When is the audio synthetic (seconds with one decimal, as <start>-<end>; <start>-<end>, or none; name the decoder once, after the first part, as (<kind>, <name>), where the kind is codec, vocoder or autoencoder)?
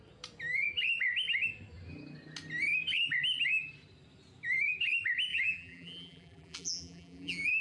5.3-7.6 (vocoder, BigVGAN v2)